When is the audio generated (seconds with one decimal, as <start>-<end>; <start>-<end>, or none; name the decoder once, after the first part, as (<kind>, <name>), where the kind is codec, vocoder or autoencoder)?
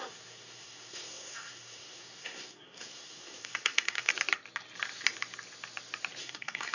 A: 0.0-4.1 (codec, SNAC); 6.2-6.7